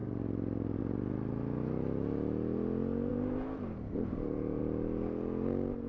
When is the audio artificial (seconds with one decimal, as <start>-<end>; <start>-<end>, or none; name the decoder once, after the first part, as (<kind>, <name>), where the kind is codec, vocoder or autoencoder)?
3.1-4.6 (vocoder, BigVGAN v2)